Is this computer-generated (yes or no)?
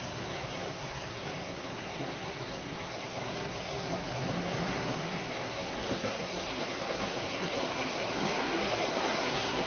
yes